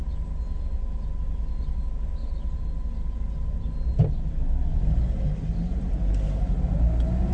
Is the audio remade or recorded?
recorded